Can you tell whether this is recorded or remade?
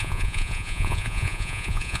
remade